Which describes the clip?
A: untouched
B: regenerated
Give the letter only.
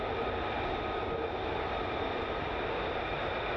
A